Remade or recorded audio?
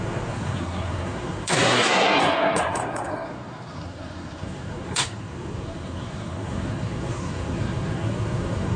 remade